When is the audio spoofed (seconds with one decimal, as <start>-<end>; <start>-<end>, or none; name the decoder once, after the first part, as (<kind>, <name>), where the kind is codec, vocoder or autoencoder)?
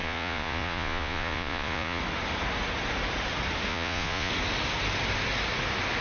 0.0-2.0 (vocoder, Vocos); 3.7-4.3